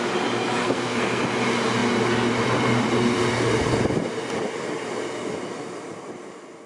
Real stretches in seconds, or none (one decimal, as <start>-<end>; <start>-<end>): 0.0-0.6; 1.2-6.7